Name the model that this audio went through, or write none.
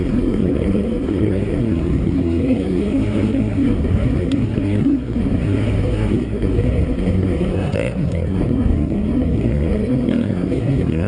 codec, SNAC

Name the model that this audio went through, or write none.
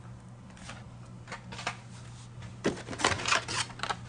none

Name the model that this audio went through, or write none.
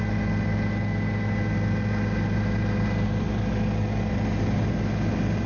none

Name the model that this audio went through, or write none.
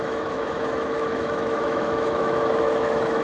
autoencoder, DAC-VAE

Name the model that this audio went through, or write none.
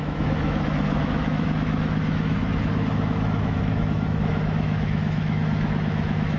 autoencoder, DAC-VAE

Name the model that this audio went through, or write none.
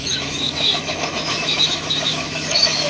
autoencoder, DAC-VAE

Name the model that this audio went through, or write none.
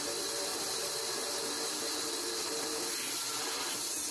none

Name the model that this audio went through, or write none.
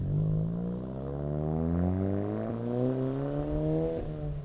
none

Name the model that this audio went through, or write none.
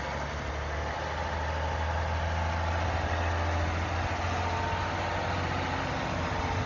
none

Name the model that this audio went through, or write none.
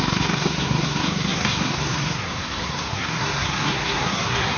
codec, SNAC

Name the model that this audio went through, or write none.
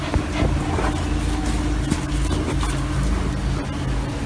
none